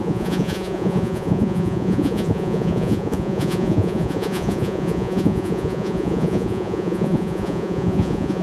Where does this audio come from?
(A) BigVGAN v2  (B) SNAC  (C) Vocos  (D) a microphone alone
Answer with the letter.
C